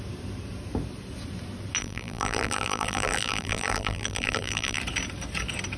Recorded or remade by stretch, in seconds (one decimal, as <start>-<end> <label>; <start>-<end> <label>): 0.0-1.8 recorded; 1.8-4.8 remade; 4.8-5.8 recorded